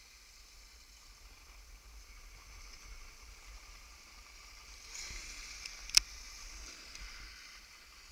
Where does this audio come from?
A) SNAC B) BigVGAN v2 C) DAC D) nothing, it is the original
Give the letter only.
D